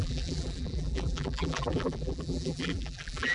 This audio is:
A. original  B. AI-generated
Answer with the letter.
B